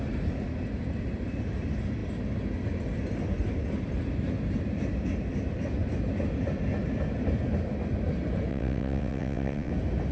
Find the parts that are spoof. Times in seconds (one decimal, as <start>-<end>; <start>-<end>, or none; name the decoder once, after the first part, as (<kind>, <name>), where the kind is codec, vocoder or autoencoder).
8.5-9.7 (vocoder, WaveNeXt)